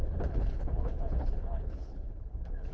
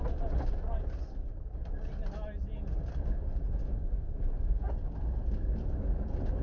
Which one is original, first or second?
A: second